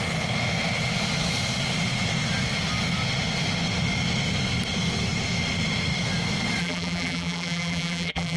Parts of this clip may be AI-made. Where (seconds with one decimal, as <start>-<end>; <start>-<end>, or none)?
6.6-8.4